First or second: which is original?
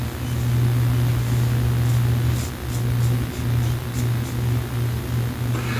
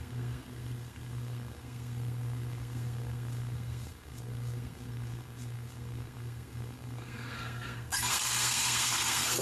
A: first